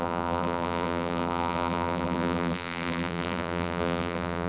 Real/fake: fake